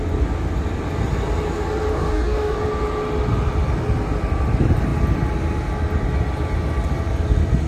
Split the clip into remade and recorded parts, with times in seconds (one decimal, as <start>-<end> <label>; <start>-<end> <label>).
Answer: 0.0-1.9 recorded; 1.9-2.6 remade; 2.6-7.7 recorded